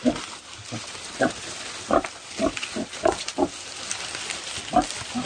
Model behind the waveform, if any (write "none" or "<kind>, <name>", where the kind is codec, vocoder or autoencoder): none